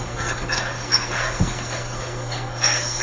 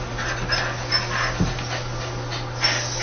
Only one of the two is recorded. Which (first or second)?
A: second